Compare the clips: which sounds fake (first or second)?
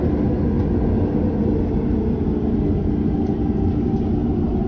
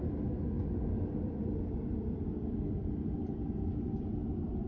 second